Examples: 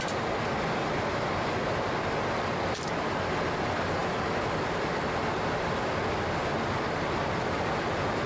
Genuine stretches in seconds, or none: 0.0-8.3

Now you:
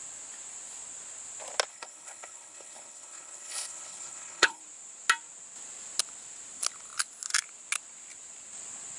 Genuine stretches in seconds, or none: 0.0-1.7; 4.6-9.0

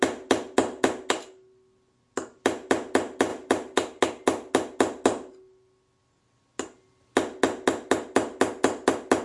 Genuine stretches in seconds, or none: 0.0-3.3; 4.0-9.2

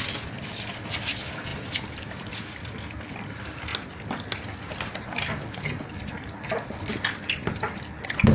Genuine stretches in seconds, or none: 0.0-8.3

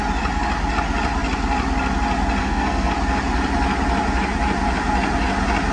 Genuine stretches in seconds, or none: 0.0-2.4; 2.9-5.7

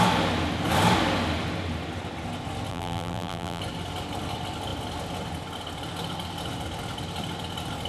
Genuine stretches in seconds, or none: 0.0-2.7; 3.6-7.9